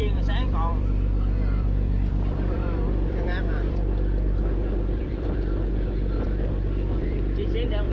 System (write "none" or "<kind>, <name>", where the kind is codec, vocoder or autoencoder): vocoder, BigVGAN v2